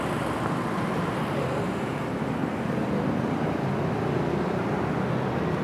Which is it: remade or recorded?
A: recorded